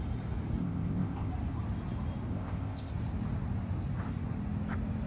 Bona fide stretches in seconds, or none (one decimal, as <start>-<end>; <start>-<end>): 0.0-0.6; 1.3-2.3; 2.9-5.1